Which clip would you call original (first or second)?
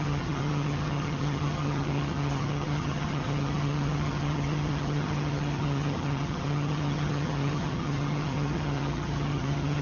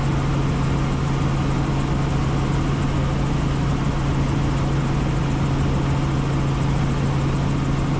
second